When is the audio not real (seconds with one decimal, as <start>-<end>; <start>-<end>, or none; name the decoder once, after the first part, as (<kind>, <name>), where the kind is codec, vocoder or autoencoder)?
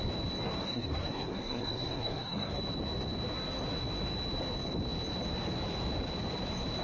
0.6-2.6 (codec, SNAC)